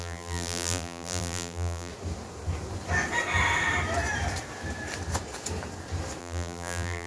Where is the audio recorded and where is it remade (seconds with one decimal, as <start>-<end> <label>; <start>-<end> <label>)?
0.0-1.9 remade; 1.9-6.2 recorded; 6.2-7.1 remade